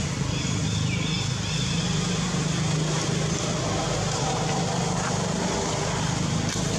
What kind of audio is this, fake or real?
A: real